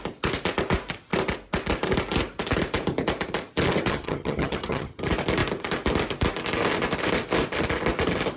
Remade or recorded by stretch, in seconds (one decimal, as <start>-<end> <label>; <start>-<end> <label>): 0.0-3.9 recorded; 3.9-5.0 remade; 5.0-8.4 recorded